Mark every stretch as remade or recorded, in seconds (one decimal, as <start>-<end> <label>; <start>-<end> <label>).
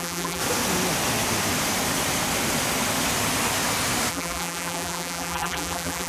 0.0-0.4 remade; 0.4-4.1 recorded; 4.1-6.1 remade